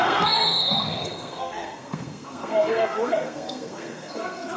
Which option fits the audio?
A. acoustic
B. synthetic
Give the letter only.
B